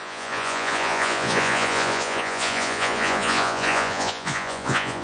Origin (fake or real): fake